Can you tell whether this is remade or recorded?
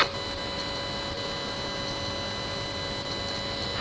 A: recorded